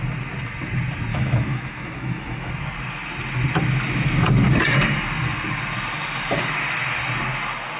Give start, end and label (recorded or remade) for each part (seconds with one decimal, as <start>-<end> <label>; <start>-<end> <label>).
0.0-1.1 recorded; 1.1-2.5 remade; 2.5-7.8 recorded